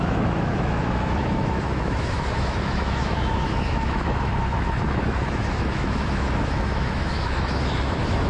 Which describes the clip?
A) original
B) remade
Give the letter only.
B